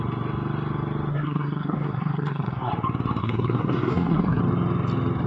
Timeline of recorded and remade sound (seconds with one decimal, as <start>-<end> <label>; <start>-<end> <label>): 0.0-1.1 recorded; 1.1-2.7 remade; 2.7-3.2 recorded; 3.2-4.4 remade; 4.4-5.3 recorded